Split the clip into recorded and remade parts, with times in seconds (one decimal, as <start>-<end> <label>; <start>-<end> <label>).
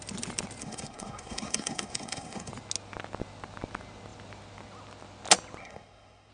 0.0-0.6 recorded; 0.6-2.5 remade; 2.5-5.6 recorded; 5.6-6.3 remade